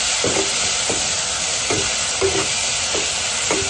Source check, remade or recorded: recorded